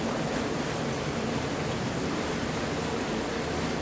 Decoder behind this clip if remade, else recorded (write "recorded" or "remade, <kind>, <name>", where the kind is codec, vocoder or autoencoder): recorded